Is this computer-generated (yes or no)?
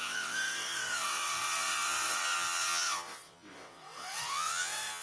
yes